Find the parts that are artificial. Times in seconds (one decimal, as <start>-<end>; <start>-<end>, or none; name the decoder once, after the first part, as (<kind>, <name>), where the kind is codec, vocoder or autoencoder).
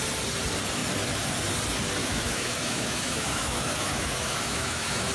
2.0-5.1 (autoencoder, DAC-VAE)